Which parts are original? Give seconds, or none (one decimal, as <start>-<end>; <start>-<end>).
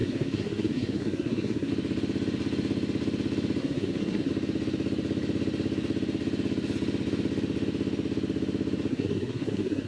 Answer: 1.7-3.6; 4.3-8.9